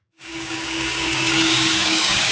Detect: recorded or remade remade